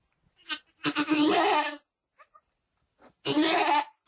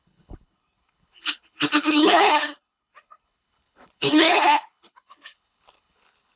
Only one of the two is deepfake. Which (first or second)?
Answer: second